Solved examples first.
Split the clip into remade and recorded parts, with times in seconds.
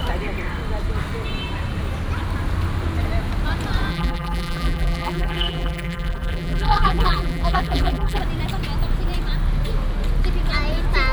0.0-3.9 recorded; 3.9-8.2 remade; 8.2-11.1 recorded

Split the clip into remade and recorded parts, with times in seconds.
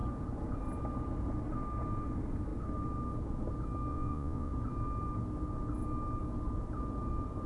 0.0-3.9 recorded; 3.9-4.5 remade; 4.5-7.5 recorded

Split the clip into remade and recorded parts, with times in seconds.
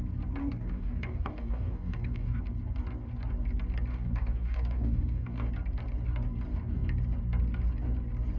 0.0-0.4 recorded; 0.4-2.4 remade; 2.4-3.9 recorded; 3.9-5.5 remade; 5.5-8.4 recorded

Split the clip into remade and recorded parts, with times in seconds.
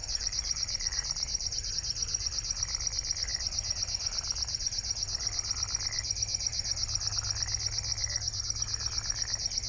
0.0-1.7 remade; 1.7-9.7 recorded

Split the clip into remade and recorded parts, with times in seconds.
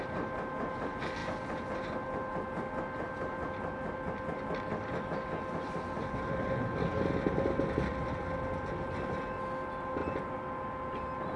0.0-11.4 recorded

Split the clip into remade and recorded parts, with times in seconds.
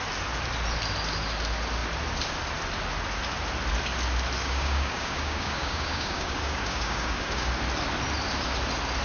0.0-4.4 recorded; 4.4-7.5 remade; 7.5-9.0 recorded